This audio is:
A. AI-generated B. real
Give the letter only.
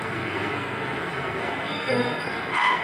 A